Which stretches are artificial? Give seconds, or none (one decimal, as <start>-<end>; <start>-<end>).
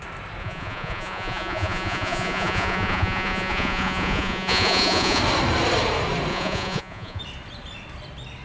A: 0.4-5.2; 6.3-7.2